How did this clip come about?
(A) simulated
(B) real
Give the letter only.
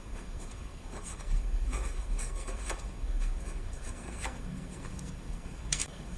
A